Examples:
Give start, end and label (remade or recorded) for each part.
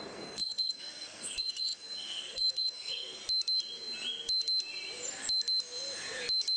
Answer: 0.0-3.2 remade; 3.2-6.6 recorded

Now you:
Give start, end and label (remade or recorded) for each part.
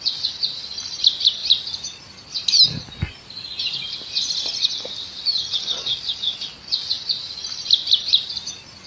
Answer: 0.0-8.9 recorded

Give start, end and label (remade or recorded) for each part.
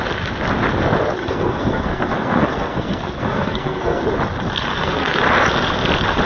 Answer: 0.0-1.2 recorded; 1.2-4.0 remade; 4.0-4.7 recorded; 4.7-5.2 remade; 5.2-6.2 recorded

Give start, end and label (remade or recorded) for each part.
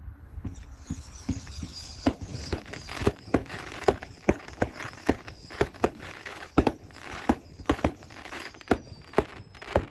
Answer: 0.0-8.5 remade; 8.5-9.9 recorded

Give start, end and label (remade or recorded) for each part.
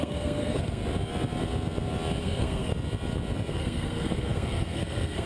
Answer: 0.0-0.8 remade; 0.8-2.2 recorded; 2.2-2.7 remade; 2.7-3.5 recorded; 3.5-5.3 remade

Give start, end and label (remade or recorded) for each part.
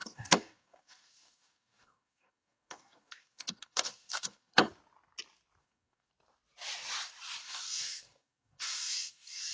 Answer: 0.0-4.7 remade; 4.7-5.6 recorded; 5.6-6.1 remade; 6.1-7.4 recorded; 7.4-9.5 remade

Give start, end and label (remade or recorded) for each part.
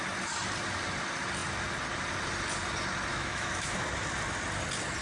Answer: 0.0-3.1 recorded; 3.1-3.8 remade; 3.8-5.0 recorded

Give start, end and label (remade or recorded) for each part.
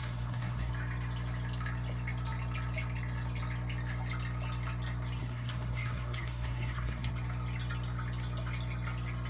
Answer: 0.0-0.7 remade; 0.7-5.2 recorded; 5.2-7.1 remade; 7.1-9.3 recorded